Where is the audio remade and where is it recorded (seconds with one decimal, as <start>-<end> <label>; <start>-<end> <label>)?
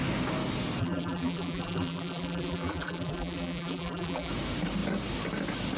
0.0-0.8 recorded; 0.8-4.3 remade; 4.3-5.8 recorded